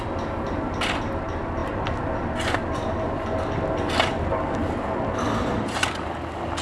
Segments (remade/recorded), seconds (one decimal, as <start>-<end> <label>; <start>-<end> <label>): 0.0-1.6 recorded; 1.6-2.3 remade; 2.3-6.6 recorded